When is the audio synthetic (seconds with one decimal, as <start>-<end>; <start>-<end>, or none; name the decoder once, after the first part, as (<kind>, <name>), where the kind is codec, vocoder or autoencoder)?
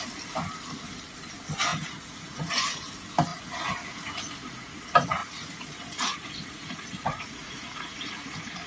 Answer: 1.7-2.9 (vocoder, Vocos); 3.3-4.7; 5.2-8.7